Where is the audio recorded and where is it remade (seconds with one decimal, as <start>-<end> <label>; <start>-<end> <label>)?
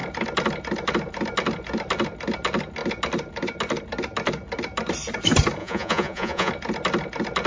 0.0-5.6 recorded; 5.6-6.5 remade; 6.5-7.5 recorded